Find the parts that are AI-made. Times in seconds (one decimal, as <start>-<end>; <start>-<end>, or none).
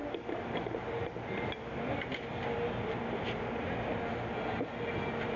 none